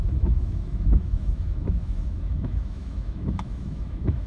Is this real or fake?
fake